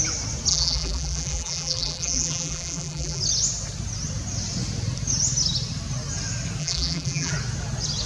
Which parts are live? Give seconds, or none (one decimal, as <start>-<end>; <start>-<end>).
0.0-0.5; 3.2-6.6; 7.3-8.1